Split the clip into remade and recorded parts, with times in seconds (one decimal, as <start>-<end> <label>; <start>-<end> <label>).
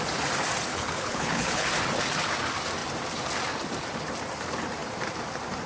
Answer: 0.0-0.7 recorded; 0.7-1.7 remade; 1.7-5.7 recorded